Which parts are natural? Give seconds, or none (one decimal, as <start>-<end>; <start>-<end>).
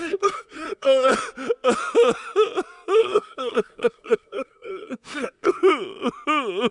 1.1-3.0; 5.6-6.7